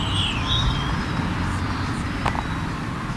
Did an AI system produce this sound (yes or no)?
no